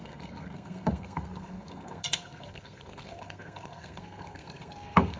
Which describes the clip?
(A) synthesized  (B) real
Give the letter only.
A